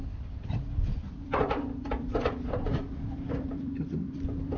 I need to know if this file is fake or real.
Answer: fake